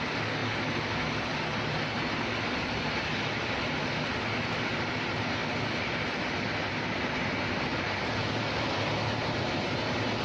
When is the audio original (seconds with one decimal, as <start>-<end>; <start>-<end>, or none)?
0.0-10.2